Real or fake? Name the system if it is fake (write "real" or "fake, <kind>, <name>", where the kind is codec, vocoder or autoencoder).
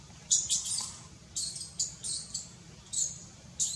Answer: real